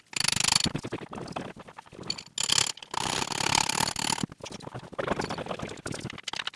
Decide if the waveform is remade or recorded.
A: recorded